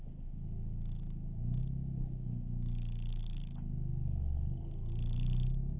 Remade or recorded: recorded